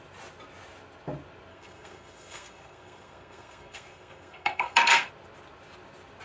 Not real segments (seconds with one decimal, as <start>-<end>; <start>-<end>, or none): 1.5-5.1